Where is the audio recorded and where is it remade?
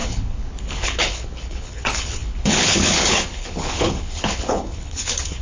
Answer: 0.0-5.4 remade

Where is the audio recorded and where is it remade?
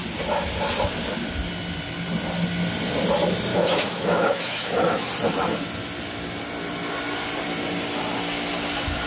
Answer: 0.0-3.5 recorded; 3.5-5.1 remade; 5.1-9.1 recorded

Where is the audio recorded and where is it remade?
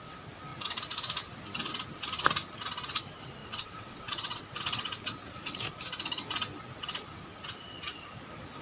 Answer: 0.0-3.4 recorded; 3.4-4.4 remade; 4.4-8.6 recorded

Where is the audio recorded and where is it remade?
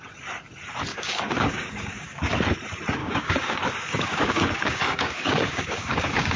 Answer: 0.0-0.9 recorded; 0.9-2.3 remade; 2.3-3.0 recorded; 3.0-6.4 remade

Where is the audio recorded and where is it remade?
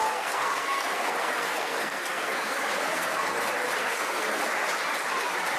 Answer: 0.0-3.4 remade; 3.4-3.8 recorded; 3.8-4.4 remade; 4.4-5.6 recorded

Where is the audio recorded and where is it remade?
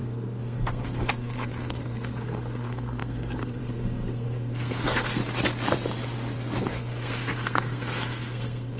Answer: 0.0-5.2 remade; 5.2-6.6 recorded; 6.6-8.8 remade